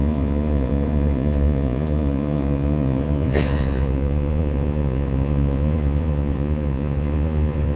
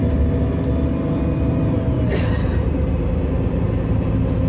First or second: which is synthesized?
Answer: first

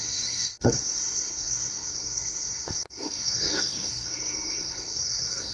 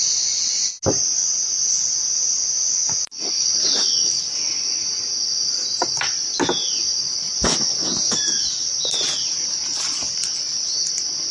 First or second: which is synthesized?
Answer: first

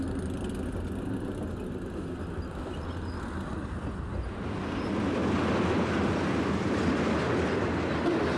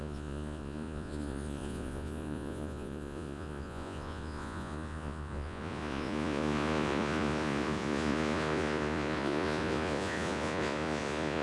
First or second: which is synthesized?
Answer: second